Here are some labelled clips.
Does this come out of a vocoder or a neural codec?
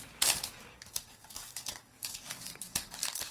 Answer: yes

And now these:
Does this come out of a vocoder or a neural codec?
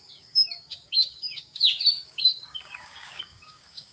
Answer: yes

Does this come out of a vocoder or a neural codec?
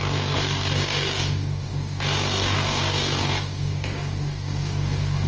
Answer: yes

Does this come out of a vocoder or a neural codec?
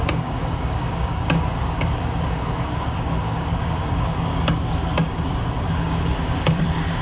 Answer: yes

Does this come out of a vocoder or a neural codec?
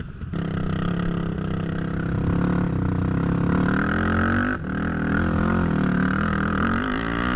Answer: no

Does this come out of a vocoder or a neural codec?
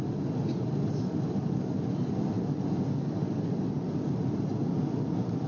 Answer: no